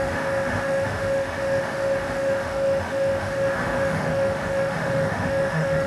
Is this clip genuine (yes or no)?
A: no